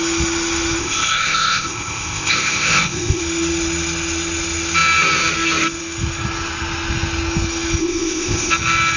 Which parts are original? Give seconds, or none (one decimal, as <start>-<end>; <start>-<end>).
0.0-0.8; 3.2-7.8; 8.5-9.0

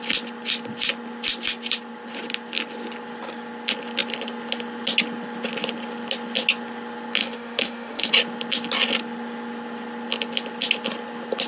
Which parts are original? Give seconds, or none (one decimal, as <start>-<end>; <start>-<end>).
0.0-7.2; 8.1-11.5

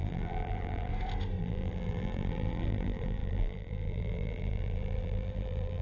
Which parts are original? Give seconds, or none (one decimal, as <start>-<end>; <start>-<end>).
0.9-1.4

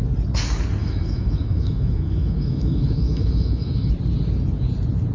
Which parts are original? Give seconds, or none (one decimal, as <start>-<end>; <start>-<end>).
0.0-0.8; 3.9-5.1

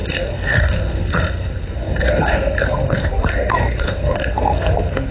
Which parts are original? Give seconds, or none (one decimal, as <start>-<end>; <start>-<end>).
none